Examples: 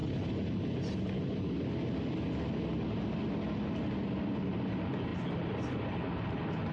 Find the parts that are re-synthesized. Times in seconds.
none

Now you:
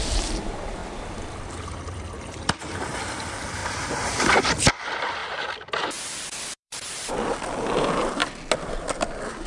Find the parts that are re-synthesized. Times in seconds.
0.0-3.6 (vocoder, BigVGAN v2); 4.7-5.2; 6.0-8.2

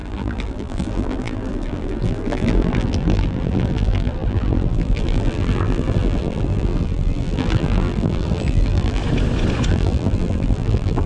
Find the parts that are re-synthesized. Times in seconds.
0.0-9.0 (vocoder, BigVGAN v2); 9.7-11.1

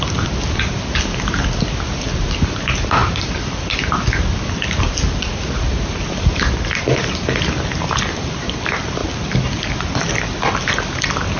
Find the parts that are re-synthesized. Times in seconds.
none

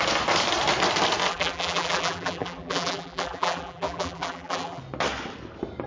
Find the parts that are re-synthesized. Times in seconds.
1.3-4.8 (vocoder, BigVGAN v2)

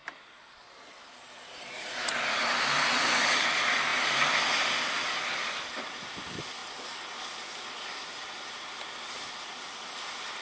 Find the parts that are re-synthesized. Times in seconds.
0.0-6.6 (vocoder, BigVGAN v2); 7.7-10.4

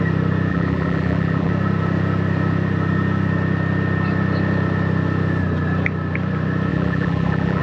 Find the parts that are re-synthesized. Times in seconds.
0.5-1.5 (vocoder, BigVGAN v2); 6.7-7.6

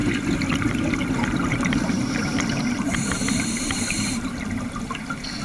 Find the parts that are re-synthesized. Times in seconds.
1.5-5.4 (vocoder, BigVGAN v2)